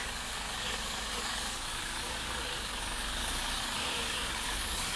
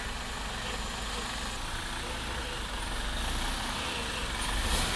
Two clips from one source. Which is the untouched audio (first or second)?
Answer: second